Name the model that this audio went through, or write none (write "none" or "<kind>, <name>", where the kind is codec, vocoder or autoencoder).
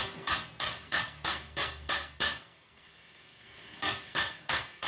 codec, SNAC